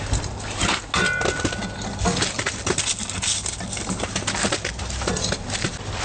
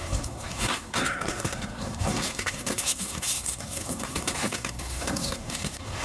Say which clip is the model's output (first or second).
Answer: second